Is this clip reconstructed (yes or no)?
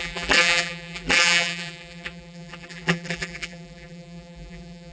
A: yes